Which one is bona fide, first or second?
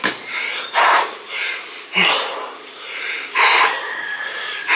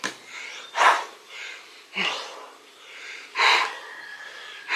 second